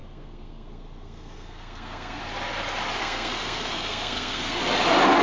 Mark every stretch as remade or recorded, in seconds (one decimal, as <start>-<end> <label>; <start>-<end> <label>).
0.0-2.2 remade; 2.2-3.0 recorded; 3.0-4.6 remade; 4.6-5.2 recorded